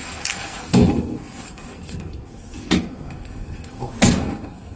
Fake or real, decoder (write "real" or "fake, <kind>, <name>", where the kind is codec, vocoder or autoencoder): fake, codec, SNAC